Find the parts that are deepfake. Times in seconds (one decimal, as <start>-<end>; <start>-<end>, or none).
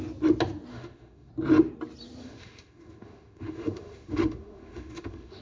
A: 0.7-1.3; 2.2-5.4